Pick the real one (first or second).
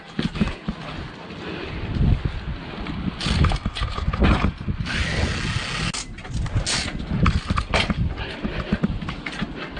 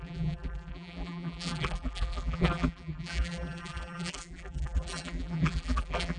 first